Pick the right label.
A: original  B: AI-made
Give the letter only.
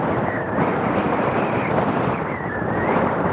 A